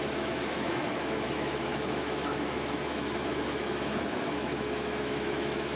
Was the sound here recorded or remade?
remade